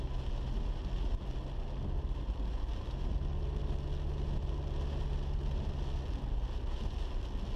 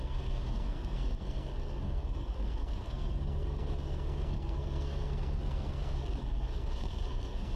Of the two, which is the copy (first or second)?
second